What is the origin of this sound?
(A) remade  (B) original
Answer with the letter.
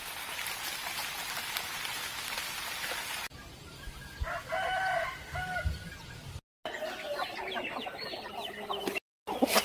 B